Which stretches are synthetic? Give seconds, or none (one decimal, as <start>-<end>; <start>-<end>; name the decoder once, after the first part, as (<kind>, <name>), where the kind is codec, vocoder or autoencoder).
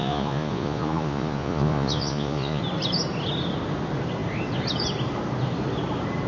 0.0-2.6 (vocoder, Vocos)